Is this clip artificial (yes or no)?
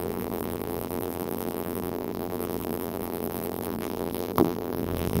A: yes